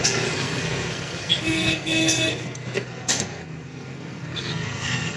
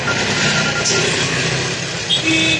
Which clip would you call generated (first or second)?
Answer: first